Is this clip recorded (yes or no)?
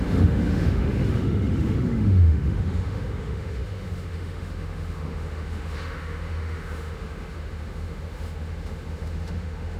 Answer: no